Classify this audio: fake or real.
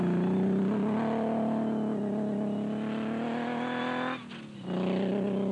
real